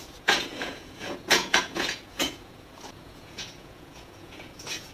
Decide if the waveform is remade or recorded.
remade